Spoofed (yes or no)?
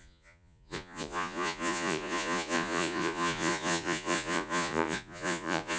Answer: yes